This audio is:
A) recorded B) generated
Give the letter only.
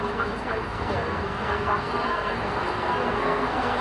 B